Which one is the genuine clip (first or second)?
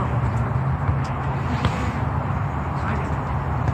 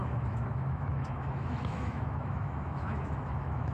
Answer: first